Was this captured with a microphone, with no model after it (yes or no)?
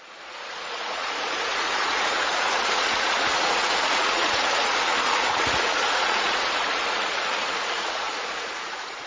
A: no